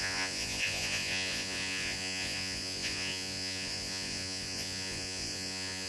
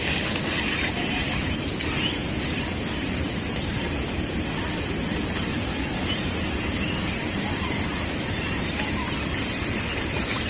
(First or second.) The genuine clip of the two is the second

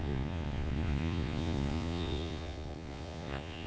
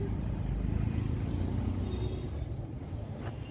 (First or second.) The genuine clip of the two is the second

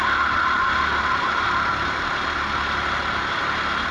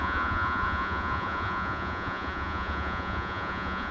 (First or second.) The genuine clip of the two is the first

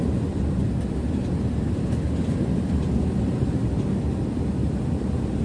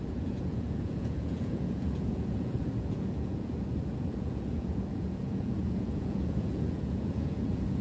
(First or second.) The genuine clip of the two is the first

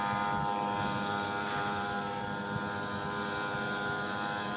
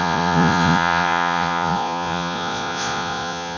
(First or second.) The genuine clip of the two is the first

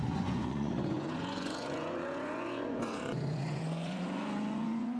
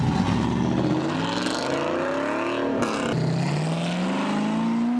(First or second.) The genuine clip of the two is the second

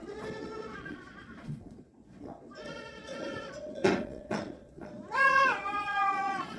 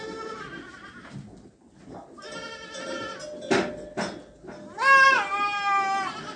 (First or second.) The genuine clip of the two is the second